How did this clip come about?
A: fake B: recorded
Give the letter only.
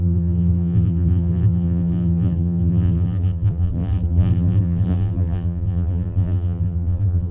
A